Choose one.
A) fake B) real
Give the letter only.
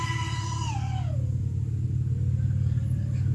B